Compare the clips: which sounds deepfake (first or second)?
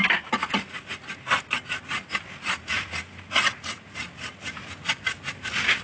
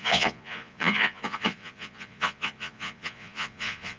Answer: second